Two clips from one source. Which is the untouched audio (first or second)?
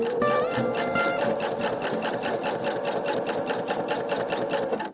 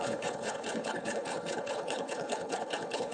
first